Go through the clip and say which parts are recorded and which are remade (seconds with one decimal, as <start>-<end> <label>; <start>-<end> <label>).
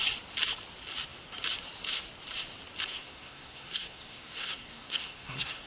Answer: 0.0-2.9 recorded; 2.9-5.7 remade